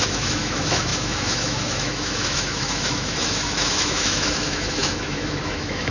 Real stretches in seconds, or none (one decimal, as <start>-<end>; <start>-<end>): none